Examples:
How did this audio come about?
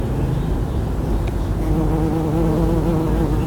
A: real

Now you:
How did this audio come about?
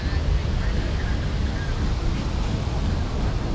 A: real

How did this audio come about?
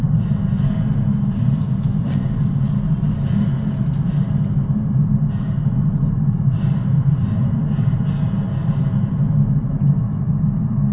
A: real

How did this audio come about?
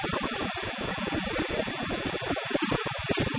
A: real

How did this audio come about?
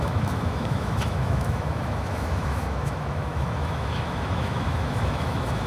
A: fake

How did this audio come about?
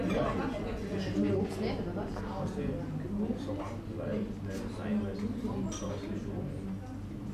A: real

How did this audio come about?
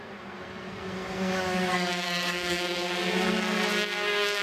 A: fake